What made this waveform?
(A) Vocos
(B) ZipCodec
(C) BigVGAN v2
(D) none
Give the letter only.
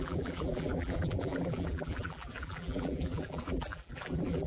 C